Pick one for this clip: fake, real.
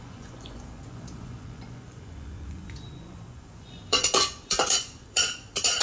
fake